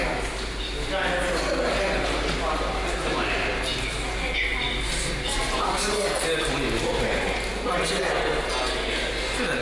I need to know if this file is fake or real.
real